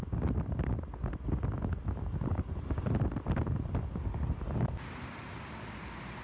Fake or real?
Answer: real